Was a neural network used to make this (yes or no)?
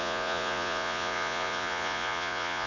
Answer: yes